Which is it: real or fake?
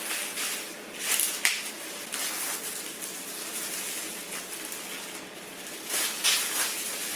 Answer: real